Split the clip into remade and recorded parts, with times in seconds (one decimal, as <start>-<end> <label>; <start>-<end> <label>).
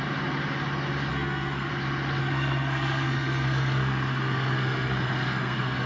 0.0-1.1 recorded; 1.1-1.7 remade; 1.7-2.2 recorded; 2.2-5.9 remade